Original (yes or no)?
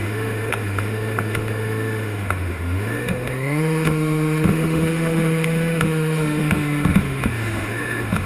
no